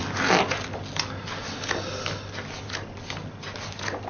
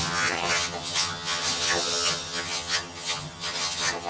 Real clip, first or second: first